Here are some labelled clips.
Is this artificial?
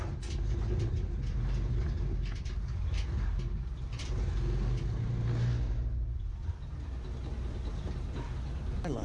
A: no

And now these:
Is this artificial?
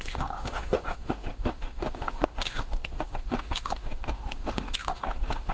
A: yes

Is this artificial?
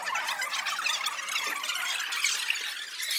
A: no